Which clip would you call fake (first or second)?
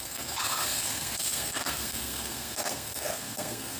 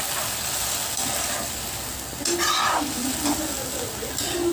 first